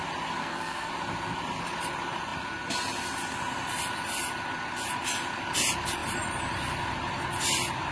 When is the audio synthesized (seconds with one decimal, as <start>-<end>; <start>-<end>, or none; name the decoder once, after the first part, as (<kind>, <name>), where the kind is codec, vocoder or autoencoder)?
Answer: 0.4-0.9 (codec, SNAC)